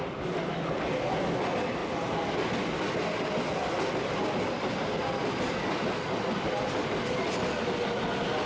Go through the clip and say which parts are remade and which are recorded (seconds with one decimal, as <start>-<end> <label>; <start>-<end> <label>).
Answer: 0.0-8.5 recorded